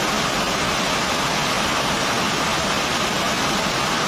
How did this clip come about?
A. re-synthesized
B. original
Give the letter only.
B